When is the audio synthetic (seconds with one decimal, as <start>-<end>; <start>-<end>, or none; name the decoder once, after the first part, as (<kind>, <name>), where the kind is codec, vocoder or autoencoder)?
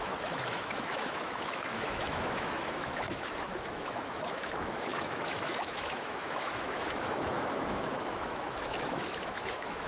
0.0-9.9 (autoencoder, DAC-VAE)